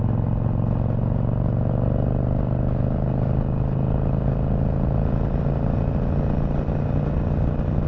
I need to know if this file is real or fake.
real